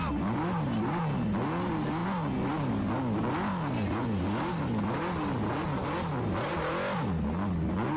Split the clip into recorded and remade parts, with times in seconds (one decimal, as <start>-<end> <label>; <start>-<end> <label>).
0.0-8.0 recorded